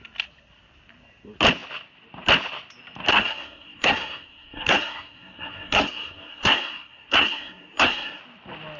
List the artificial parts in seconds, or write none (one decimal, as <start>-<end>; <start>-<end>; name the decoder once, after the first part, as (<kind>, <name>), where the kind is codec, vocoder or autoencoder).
3.1-8.2 (codec, SNAC)